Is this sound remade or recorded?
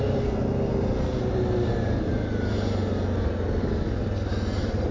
recorded